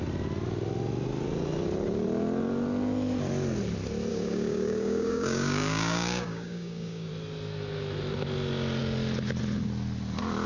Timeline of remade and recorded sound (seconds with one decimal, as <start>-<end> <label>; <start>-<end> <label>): 0.0-4.1 recorded; 4.1-7.1 remade; 7.1-10.5 recorded